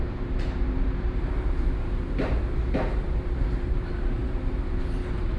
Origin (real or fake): fake